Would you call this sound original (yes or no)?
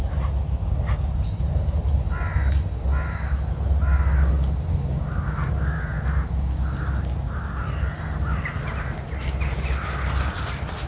yes